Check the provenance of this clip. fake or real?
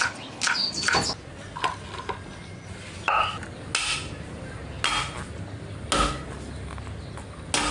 real